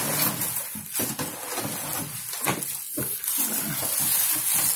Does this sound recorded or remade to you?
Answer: recorded